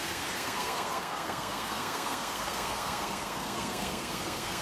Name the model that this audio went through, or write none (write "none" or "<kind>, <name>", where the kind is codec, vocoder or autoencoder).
codec, SNAC